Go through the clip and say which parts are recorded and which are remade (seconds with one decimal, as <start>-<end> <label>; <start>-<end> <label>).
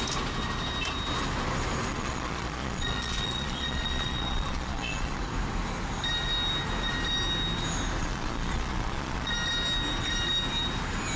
0.0-1.9 recorded; 1.9-5.2 remade; 5.2-8.0 recorded; 8.0-9.3 remade; 9.3-11.2 recorded